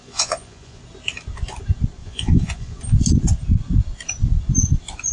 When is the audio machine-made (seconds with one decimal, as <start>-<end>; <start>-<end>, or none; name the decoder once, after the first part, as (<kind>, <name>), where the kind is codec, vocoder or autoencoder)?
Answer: 0.0-0.8 (vocoder, Vocos); 2.0-2.8